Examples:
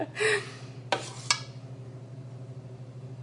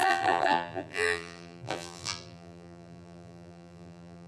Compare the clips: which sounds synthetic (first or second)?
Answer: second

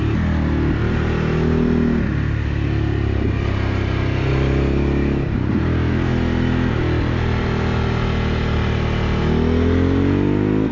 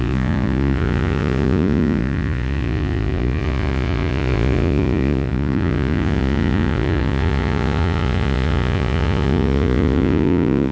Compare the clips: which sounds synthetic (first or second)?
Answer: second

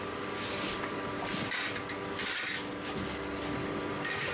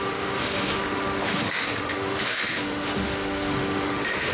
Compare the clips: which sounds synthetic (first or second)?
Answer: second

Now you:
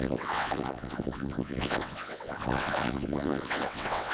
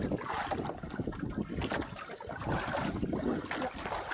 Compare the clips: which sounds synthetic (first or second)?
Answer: first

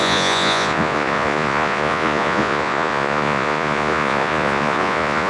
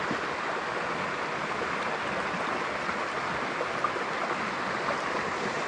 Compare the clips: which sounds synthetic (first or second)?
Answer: first